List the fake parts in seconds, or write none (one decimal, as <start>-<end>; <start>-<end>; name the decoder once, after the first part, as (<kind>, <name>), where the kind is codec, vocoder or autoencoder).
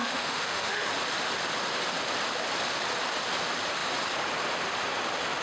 0.0-0.9 (autoencoder, DAC-VAE)